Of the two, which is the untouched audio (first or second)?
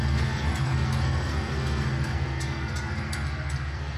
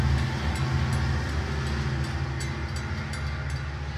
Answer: second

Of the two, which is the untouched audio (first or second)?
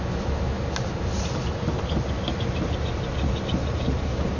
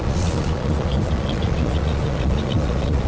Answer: first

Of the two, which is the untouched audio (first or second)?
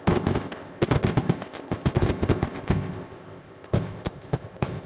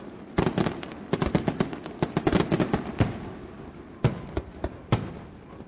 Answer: second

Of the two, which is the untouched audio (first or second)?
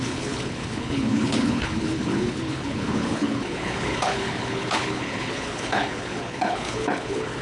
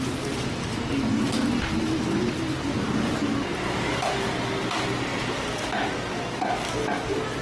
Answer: second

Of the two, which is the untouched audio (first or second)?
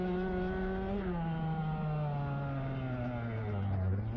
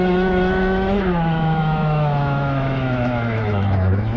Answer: first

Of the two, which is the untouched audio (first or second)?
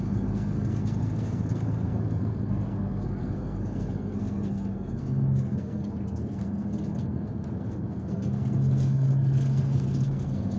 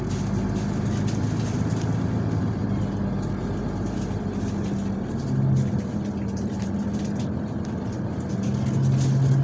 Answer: second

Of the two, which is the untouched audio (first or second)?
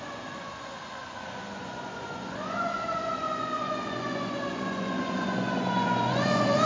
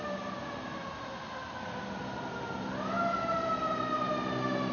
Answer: second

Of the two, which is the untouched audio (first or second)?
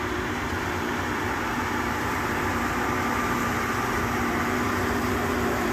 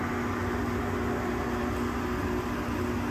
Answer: second